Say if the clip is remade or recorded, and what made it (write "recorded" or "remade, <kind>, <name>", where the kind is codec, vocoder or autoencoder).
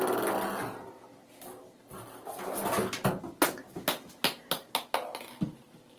recorded